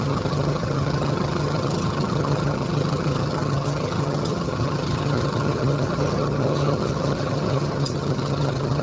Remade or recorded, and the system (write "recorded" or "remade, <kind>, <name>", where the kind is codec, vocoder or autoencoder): remade, vocoder, HiFi-GAN